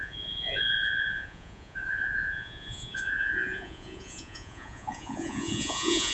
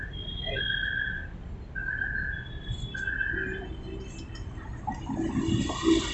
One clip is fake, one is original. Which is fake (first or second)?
first